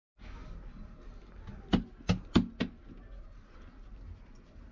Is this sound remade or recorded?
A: recorded